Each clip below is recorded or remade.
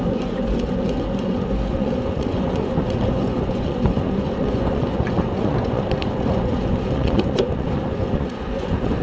remade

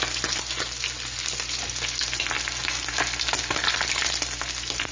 recorded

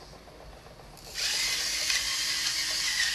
recorded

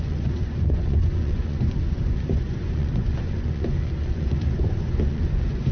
remade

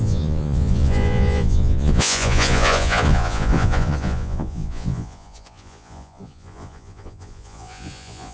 remade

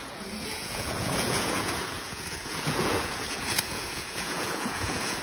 remade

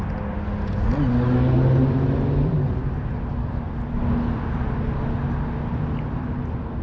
recorded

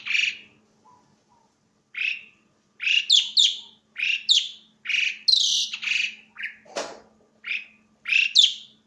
recorded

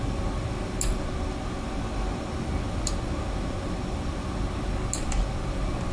recorded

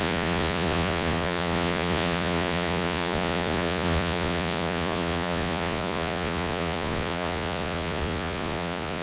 remade